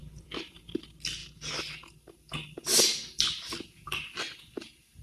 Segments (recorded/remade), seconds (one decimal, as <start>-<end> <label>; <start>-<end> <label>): 0.0-0.6 remade; 0.6-2.9 recorded; 2.9-4.4 remade; 4.4-5.0 recorded